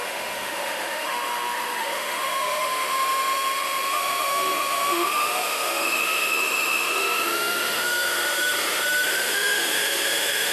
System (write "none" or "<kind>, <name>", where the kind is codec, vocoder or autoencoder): autoencoder, DAC-VAE